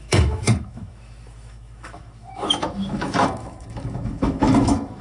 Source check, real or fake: fake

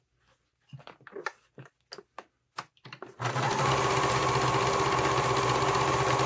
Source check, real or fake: real